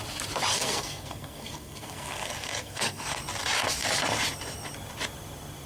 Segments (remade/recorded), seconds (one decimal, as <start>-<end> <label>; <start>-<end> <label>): 0.0-0.5 recorded; 0.5-3.2 remade; 3.2-5.7 recorded